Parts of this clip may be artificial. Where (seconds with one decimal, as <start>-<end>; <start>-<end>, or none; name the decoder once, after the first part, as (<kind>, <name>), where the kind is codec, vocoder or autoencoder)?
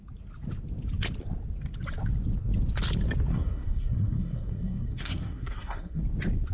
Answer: 3.3-6.0 (codec, SNAC)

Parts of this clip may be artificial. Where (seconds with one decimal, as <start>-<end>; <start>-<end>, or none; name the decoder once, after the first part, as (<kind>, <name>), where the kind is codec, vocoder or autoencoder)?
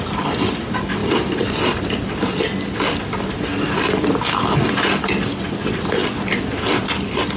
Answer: none